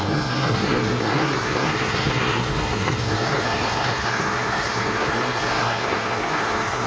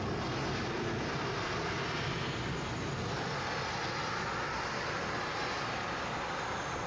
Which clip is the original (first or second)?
second